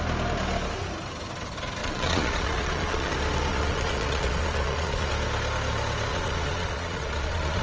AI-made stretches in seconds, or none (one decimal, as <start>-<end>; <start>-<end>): 1.8-3.1; 3.5-5.1; 6.1-7.6